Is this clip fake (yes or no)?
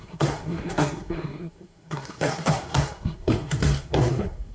yes